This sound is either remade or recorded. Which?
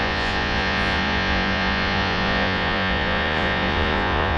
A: remade